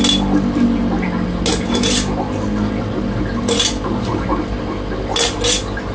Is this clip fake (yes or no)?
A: no